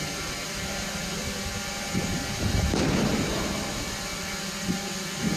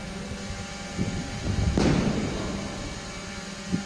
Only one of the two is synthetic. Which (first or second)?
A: first